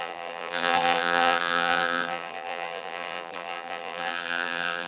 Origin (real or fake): fake